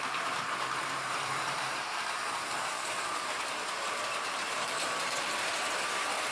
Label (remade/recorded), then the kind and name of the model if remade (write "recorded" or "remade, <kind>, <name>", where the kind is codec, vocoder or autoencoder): remade, vocoder, BigVGAN v2